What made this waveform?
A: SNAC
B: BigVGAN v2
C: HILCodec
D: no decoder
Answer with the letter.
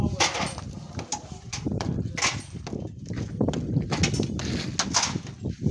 D